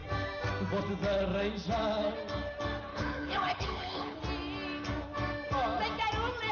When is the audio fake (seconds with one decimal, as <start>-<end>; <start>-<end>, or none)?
2.9-4.2